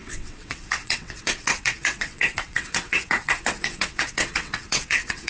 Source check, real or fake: fake